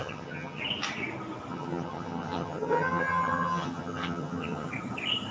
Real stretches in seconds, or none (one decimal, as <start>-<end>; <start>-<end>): 0.6-1.5; 4.7-5.3

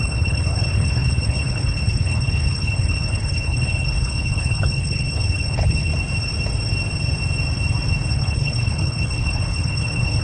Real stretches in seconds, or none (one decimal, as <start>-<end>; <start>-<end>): 5.9-8.1